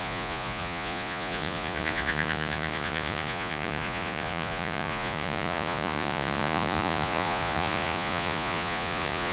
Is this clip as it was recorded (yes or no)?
no